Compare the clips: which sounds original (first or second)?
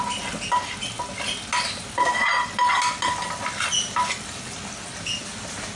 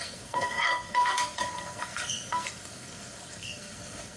first